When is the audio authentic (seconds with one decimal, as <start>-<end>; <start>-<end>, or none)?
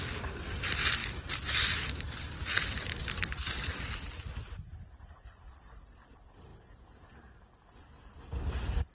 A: 6.5-8.4